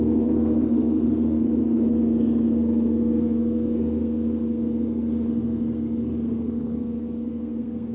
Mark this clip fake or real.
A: fake